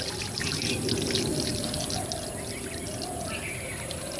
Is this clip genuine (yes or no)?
no